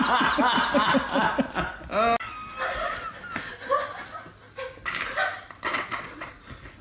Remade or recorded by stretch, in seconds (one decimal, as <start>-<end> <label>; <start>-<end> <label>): 0.0-5.7 recorded; 5.7-6.3 remade; 6.3-6.8 recorded